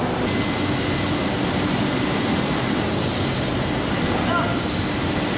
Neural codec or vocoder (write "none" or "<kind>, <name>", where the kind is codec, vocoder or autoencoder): none